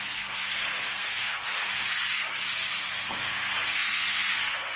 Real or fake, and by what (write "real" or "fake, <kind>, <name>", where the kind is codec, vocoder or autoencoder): fake, codec, SNAC